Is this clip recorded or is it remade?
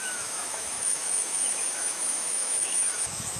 remade